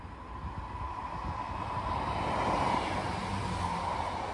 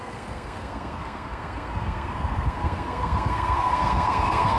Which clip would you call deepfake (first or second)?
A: second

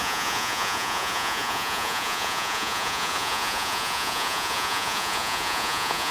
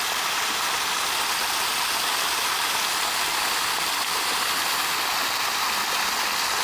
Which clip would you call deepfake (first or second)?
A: first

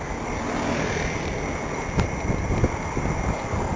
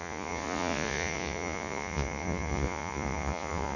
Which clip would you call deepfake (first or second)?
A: second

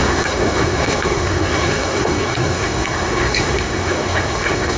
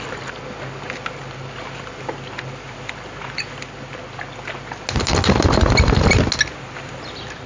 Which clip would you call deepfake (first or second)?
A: first